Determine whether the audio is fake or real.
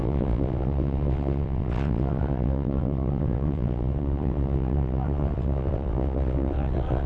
fake